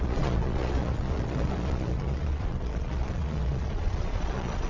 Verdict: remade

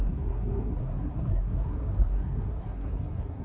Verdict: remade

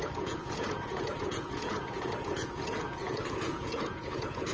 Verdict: remade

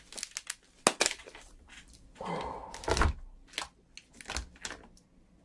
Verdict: recorded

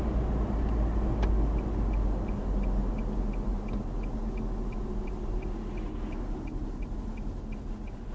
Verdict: recorded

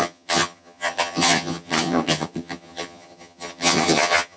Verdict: remade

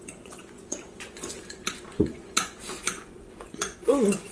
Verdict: remade